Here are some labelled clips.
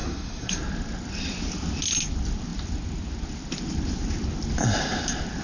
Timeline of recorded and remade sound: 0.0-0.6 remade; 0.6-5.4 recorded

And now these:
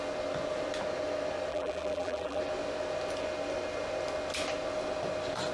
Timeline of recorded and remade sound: 0.0-1.5 recorded; 1.5-2.4 remade; 2.4-5.5 recorded

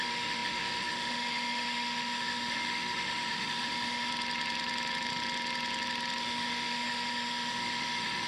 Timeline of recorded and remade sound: 0.0-4.1 remade; 4.1-6.2 recorded; 6.2-8.3 remade

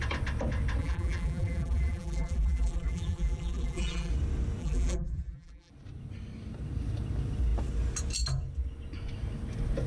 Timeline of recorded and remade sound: 0.0-0.8 recorded; 0.8-4.1 remade; 4.1-4.6 recorded; 4.6-5.7 remade; 5.7-9.9 recorded

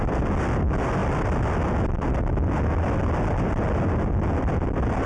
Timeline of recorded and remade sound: 0.0-5.1 recorded

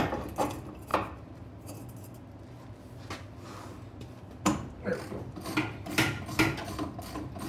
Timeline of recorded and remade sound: 0.0-0.9 remade; 0.9-4.4 recorded; 4.4-7.5 remade

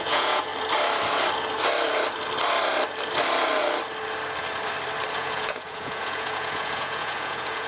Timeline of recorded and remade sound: 0.0-0.5 remade; 0.5-5.1 recorded; 5.1-7.7 remade

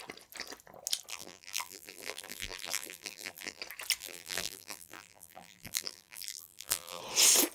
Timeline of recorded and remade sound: 0.0-1.1 recorded; 1.1-3.6 remade; 3.6-4.0 recorded; 4.0-7.0 remade; 7.0-7.5 recorded